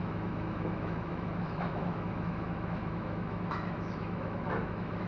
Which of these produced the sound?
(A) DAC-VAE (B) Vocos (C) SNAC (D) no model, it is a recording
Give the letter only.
A